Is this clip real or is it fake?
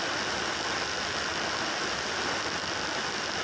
real